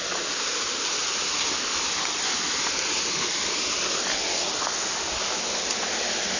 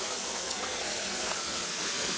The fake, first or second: second